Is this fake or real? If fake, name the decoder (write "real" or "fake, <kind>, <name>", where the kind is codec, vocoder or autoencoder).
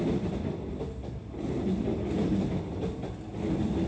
real